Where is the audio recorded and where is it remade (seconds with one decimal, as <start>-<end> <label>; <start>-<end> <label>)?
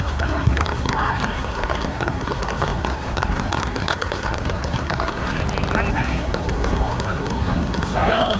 0.0-5.4 remade; 5.4-5.9 recorded; 5.9-8.4 remade